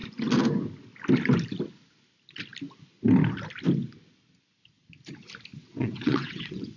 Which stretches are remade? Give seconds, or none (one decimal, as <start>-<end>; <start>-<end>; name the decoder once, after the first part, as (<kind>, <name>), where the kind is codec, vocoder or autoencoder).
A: 5.6-6.8 (vocoder, WaveNeXt)